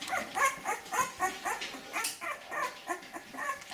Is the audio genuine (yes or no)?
yes